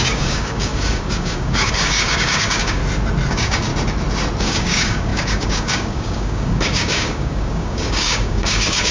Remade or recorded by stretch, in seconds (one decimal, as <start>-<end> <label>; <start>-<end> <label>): 0.0-2.8 remade; 2.8-3.3 recorded; 3.3-3.7 remade; 3.7-4.4 recorded; 4.4-8.9 remade